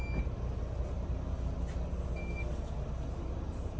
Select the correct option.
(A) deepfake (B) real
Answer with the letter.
B